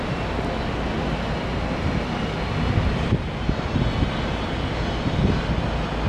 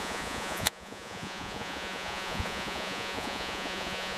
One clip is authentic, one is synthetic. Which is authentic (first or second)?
first